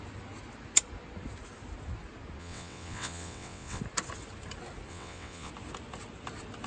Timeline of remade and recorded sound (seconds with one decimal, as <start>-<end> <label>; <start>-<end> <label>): 0.0-2.4 recorded; 2.4-3.8 remade; 3.8-4.9 recorded; 4.9-5.5 remade; 5.5-6.7 recorded